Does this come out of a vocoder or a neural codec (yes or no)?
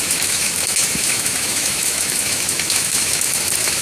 yes